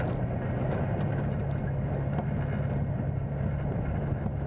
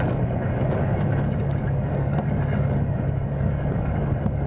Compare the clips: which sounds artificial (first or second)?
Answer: second